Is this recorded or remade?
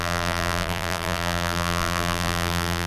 remade